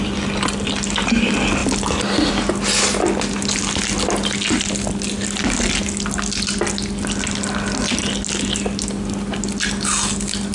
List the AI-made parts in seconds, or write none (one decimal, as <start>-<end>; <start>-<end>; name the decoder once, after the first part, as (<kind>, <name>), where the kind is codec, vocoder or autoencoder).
none